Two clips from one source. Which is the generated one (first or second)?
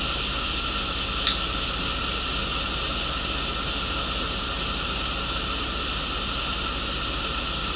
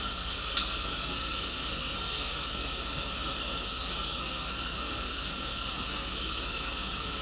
second